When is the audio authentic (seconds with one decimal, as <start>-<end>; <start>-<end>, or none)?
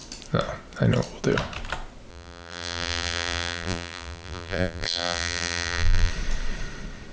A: 0.0-2.1; 6.1-7.1